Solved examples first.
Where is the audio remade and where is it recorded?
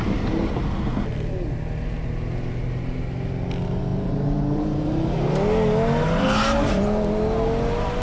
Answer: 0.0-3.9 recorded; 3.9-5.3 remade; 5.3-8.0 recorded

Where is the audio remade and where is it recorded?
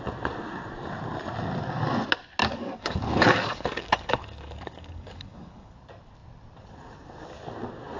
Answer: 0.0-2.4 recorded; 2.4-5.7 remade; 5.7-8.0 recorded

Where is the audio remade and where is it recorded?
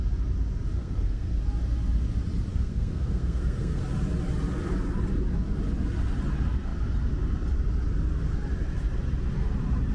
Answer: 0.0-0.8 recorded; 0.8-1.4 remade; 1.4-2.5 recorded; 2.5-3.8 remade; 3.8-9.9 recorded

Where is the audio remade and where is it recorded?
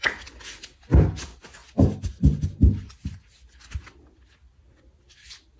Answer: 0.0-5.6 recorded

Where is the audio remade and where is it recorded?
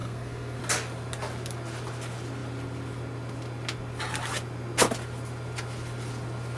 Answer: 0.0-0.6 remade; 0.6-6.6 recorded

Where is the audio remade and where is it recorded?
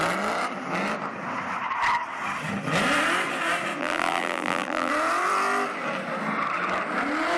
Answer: 0.0-3.8 recorded; 3.8-4.9 remade; 4.9-7.4 recorded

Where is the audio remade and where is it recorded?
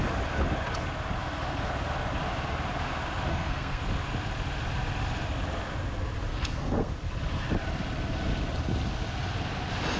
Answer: 0.0-3.3 recorded; 3.3-3.8 remade; 3.8-6.3 recorded; 6.3-6.9 remade; 6.9-10.0 recorded